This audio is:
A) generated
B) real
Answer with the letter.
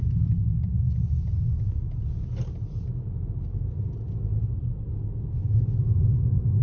B